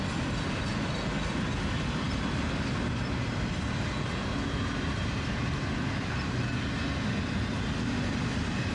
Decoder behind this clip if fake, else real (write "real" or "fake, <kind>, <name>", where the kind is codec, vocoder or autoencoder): real